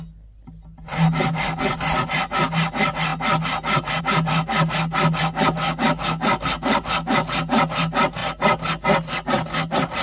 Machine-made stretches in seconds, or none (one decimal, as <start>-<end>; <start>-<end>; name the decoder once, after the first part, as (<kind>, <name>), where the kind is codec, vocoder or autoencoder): none